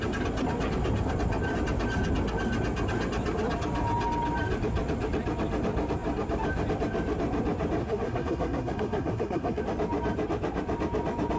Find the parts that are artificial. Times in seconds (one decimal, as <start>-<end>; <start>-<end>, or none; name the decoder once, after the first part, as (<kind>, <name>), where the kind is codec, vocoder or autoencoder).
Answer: 7.8-9.6 (codec, SNAC)